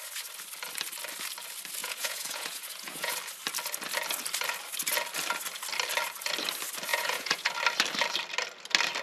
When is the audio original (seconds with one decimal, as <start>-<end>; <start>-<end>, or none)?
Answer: 0.0-1.8; 3.1-6.9; 7.5-9.0